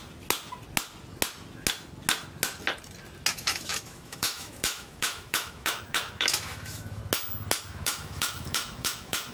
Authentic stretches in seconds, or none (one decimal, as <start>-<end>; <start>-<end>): 0.0-3.3; 7.0-7.7